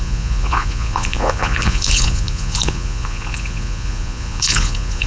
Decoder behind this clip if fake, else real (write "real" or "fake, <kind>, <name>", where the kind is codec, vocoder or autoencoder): fake, vocoder, Vocos